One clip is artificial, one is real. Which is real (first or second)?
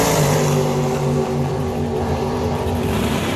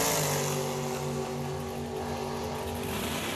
second